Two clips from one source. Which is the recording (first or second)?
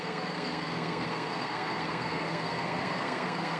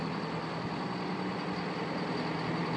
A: second